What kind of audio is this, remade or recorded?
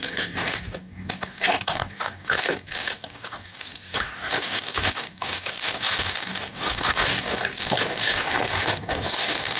remade